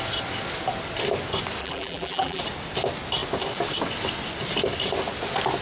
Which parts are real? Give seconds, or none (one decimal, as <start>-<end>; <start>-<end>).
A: 0.0-1.6; 2.4-5.6